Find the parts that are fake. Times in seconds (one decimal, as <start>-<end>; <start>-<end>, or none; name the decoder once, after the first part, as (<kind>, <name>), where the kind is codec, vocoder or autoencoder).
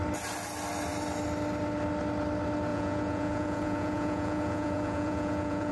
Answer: 2.7-5.7 (vocoder, Vocos)